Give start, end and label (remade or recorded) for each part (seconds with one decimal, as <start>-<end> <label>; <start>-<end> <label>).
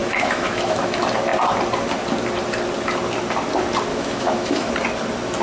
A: 0.0-0.9 remade; 0.9-3.9 recorded; 3.9-4.7 remade; 4.7-5.4 recorded